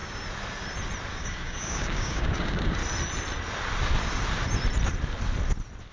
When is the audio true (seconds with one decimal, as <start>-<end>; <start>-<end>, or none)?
0.0-1.1; 2.8-5.9